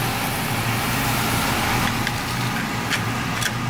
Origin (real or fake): real